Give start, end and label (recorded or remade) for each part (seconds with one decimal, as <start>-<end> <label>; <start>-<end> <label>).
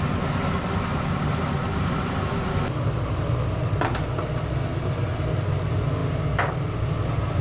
0.0-7.4 recorded